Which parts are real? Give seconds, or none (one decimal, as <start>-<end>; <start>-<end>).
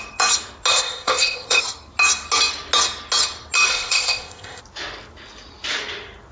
0.0-0.7; 1.6-3.7; 4.6-6.3